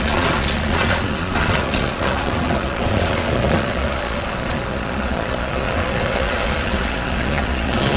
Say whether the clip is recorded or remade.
remade